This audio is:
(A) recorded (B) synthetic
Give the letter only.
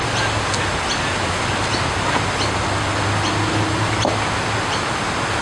A